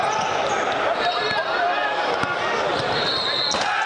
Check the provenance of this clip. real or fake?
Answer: real